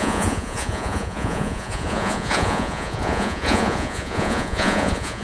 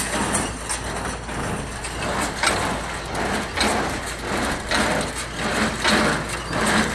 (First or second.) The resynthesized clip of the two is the first